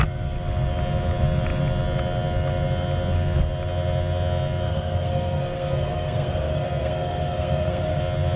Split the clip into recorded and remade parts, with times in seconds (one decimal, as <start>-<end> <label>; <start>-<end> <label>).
0.0-4.7 recorded; 4.7-8.0 remade; 8.0-8.4 recorded